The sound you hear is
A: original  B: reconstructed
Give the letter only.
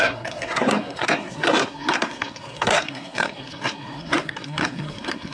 B